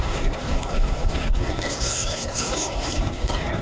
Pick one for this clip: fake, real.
fake